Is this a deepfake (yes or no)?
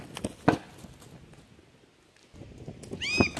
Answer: no